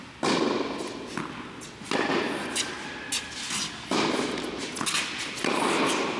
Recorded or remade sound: recorded